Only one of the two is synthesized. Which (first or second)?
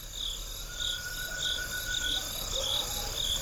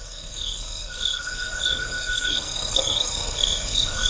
second